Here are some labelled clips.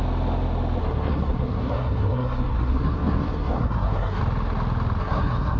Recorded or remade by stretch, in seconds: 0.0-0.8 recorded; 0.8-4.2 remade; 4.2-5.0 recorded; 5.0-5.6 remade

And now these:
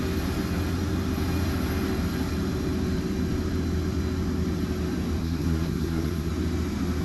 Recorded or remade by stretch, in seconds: 0.0-5.2 recorded; 5.2-6.3 remade; 6.3-7.0 recorded

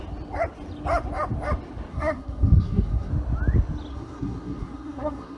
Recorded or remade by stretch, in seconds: 0.0-1.9 recorded; 1.9-3.1 remade; 3.1-3.9 recorded; 3.9-5.4 remade

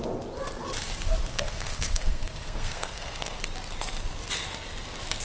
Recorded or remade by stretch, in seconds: 0.0-1.3 recorded; 1.3-3.4 remade; 3.4-5.2 recorded

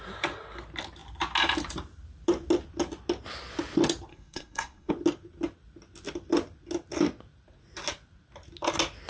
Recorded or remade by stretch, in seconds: 0.0-4.1 recorded; 4.1-4.9 remade; 4.9-9.1 recorded

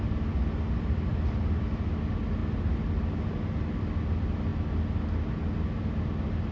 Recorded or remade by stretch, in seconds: 0.0-6.5 recorded

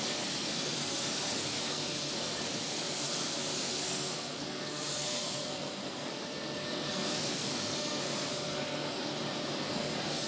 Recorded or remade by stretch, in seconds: 0.0-9.1 remade; 9.1-9.7 recorded; 9.7-10.3 remade